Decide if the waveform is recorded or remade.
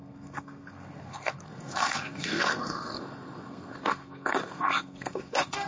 remade